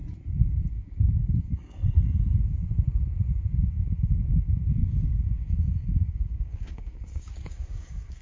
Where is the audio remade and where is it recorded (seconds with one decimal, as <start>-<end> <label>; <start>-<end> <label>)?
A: 0.0-0.7 recorded; 0.7-1.8 remade; 1.8-3.7 recorded; 3.7-8.2 remade